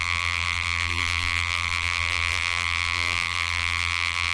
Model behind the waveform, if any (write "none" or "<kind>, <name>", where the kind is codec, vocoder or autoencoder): vocoder, BigVGAN v2